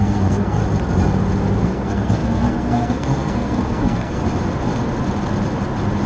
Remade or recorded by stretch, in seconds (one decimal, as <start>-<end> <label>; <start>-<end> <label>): 0.0-0.6 remade; 0.6-1.6 recorded; 1.6-4.2 remade; 4.2-6.1 recorded